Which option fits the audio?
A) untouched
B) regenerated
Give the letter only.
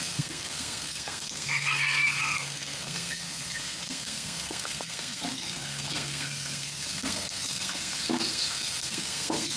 B